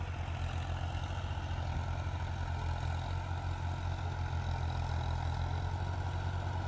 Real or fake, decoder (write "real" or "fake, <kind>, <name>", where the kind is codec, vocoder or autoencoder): real